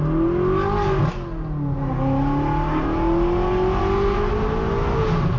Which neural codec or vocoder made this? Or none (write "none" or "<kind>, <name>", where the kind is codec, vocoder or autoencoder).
none